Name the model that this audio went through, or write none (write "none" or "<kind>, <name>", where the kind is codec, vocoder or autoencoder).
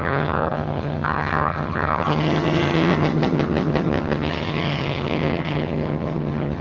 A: vocoder, HiFi-GAN